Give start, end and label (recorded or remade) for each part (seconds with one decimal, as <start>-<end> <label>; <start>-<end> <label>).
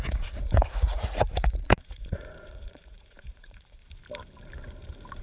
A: 0.0-3.8 remade; 3.8-5.2 recorded